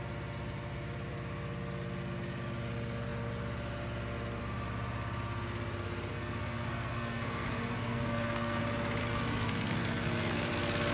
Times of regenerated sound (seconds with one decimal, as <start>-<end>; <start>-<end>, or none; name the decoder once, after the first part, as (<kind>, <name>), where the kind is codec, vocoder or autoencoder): 6.1-8.6 (codec, SNAC); 9.0-10.5